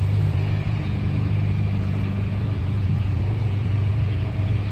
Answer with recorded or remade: remade